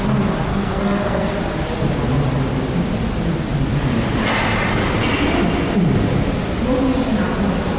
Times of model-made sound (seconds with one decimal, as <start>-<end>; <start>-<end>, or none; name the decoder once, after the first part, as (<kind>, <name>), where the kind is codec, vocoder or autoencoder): 0.5-1.3 (codec, SNAC)